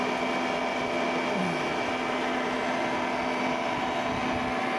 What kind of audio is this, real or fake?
real